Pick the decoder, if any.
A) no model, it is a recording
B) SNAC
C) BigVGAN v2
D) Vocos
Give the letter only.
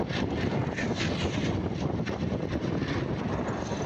A